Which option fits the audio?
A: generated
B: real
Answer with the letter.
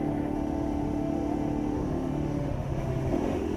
A